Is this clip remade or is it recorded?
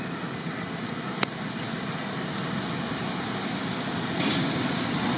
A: recorded